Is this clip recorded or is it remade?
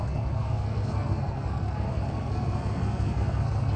remade